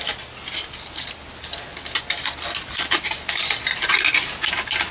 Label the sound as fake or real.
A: real